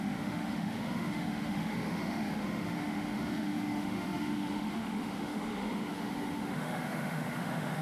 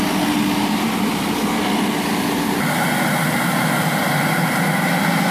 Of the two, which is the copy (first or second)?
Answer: first